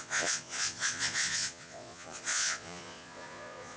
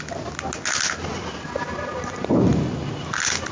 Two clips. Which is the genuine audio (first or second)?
second